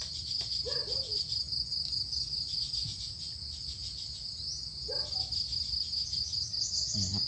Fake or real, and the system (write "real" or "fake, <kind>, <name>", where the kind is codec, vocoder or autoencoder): real